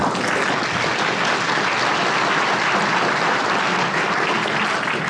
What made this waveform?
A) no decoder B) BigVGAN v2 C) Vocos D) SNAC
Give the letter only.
A